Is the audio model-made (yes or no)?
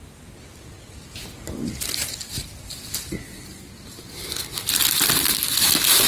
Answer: no